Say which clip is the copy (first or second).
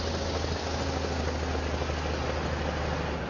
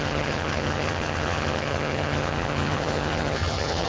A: second